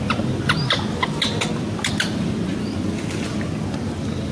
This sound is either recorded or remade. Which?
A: recorded